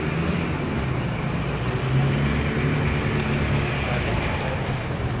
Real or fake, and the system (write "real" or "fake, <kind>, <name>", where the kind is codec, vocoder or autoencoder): real